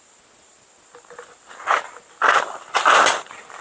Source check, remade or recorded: recorded